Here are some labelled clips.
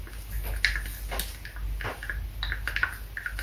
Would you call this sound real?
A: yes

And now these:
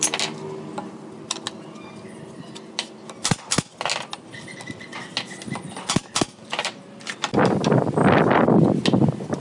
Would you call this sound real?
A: yes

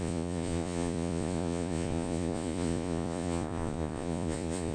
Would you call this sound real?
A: no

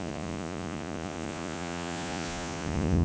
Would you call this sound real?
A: no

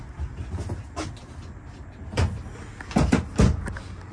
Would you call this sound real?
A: yes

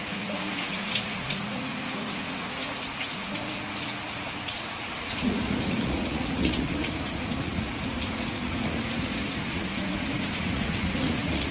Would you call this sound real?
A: no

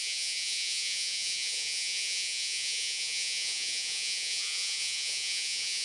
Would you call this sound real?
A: no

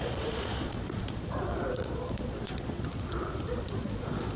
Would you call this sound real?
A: no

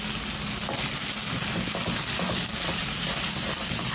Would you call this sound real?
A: yes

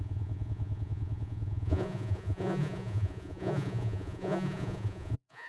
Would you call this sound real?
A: no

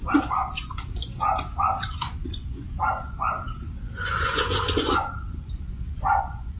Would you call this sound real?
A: no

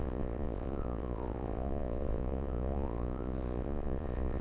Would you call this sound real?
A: no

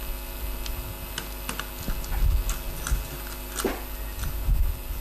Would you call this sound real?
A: yes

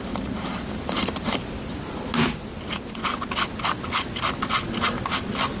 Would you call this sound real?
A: yes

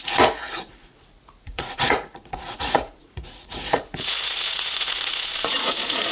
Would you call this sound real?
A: no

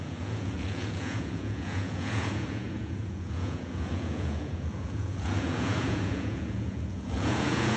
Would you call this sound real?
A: no